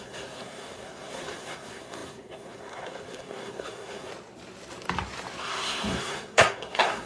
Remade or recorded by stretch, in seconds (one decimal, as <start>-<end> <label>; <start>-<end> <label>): 0.0-4.1 remade; 4.1-5.4 recorded; 5.4-7.1 remade